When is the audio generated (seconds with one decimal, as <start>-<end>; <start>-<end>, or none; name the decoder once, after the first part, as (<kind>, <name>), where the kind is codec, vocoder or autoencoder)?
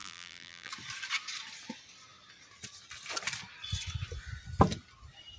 0.0-0.7 (vocoder, BigVGAN v2)